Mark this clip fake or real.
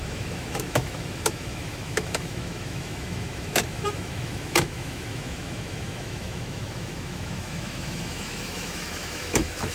fake